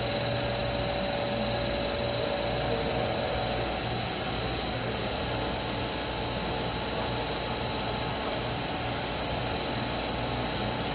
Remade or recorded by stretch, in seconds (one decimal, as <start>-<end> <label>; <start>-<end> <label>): 0.0-8.1 recorded; 8.1-9.4 remade; 9.4-10.9 recorded